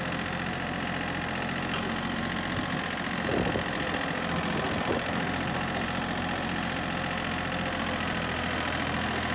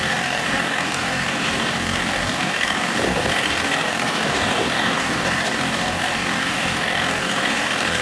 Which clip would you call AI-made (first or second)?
second